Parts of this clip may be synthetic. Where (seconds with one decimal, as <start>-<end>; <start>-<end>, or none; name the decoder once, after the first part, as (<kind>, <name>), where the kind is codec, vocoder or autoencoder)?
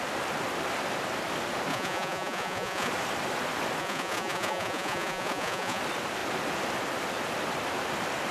1.7-2.9 (vocoder, Vocos); 3.8-5.8